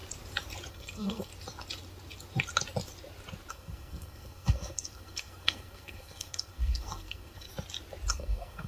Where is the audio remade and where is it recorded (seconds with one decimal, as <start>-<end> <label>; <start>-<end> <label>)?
0.0-0.7 recorded; 0.7-1.3 remade; 1.3-3.5 recorded; 3.5-7.5 remade; 7.5-8.1 recorded; 8.1-8.7 remade